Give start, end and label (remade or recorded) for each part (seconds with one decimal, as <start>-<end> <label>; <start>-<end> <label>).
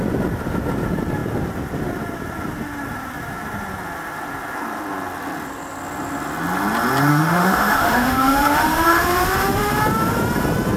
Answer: 0.0-7.1 recorded; 7.1-9.7 remade; 9.7-10.8 recorded